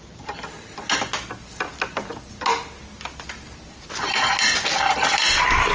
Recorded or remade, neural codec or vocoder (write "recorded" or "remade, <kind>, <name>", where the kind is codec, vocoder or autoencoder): recorded